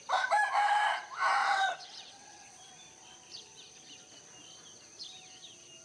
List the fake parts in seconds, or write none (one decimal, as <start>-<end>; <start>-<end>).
1.4-2.7